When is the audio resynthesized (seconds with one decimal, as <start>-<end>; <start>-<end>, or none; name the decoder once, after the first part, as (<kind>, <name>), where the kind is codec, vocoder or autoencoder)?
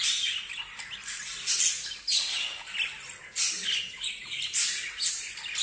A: none